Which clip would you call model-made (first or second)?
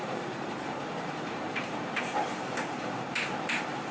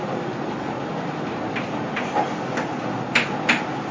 first